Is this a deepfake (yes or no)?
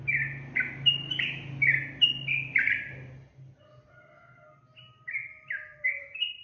no